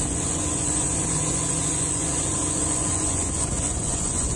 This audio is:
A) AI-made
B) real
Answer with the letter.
A